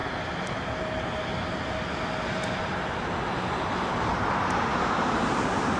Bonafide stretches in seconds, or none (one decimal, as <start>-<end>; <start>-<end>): 0.0-4.7